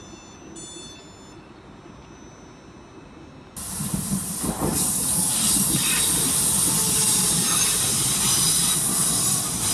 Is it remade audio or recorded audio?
recorded